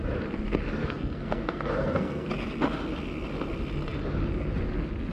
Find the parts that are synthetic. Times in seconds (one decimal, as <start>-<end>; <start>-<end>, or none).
0.8-2.3